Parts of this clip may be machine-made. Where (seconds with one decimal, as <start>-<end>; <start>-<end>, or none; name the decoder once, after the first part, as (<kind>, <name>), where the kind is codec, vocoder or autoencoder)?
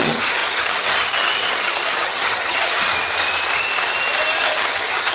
0.0-2.9 (vocoder, HiFi-GAN); 4.4-5.1